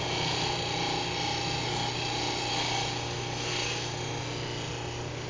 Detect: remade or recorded recorded